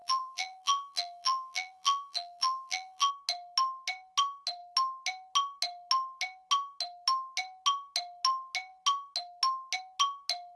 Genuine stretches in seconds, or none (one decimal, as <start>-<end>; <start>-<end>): 3.1-10.6